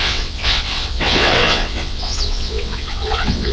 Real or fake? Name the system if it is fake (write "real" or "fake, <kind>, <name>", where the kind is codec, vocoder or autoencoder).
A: fake, vocoder, WaveNeXt